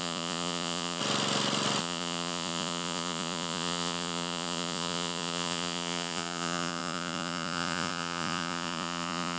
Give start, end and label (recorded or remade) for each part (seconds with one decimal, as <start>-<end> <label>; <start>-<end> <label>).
0.0-1.0 remade; 1.0-1.8 recorded; 1.8-9.4 remade